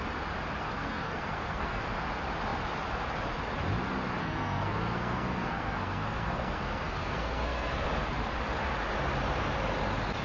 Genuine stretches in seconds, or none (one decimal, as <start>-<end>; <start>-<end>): 0.0-0.6; 1.8-4.2; 7.7-10.2

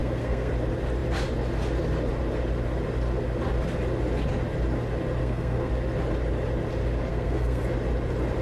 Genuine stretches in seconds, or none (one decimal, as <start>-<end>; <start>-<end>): 0.5-5.2; 5.7-7.1; 7.6-8.4

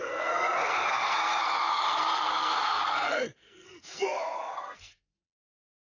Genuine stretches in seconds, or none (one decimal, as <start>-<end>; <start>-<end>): none

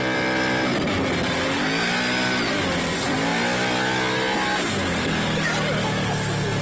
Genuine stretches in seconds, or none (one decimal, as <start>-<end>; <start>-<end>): 0.0-6.6

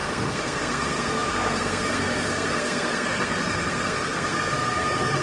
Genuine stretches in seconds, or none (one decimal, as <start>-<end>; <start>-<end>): none

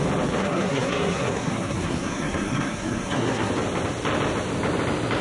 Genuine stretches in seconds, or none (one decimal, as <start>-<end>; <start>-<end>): 0.0-0.4; 3.5-5.2

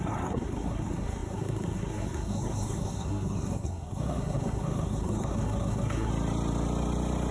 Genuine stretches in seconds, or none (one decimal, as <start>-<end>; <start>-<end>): 6.1-7.3